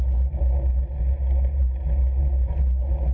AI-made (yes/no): no